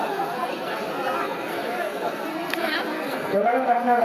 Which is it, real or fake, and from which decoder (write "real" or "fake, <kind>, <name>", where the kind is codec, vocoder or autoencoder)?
fake, codec, SNAC